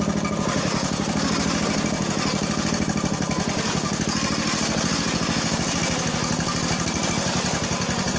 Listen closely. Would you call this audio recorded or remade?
recorded